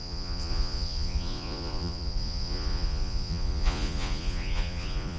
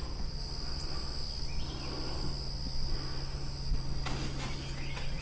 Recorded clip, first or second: second